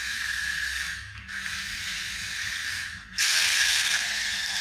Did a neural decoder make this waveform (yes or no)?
yes